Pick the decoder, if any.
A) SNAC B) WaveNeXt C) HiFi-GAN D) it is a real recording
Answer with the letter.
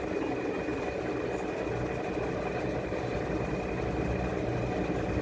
D